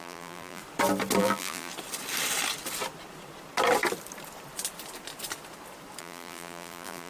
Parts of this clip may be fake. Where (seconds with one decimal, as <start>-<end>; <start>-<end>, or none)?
0.0-0.6; 1.2-1.7; 6.0-7.1